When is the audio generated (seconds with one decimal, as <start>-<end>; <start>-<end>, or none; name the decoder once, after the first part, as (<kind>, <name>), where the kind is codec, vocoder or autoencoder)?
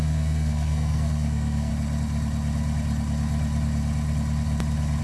0.0-1.7 (codec, SNAC)